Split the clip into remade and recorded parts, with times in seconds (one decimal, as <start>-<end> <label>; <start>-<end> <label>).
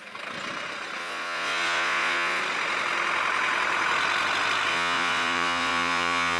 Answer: 0.0-1.0 recorded; 1.0-2.4 remade; 2.4-4.7 recorded; 4.7-6.4 remade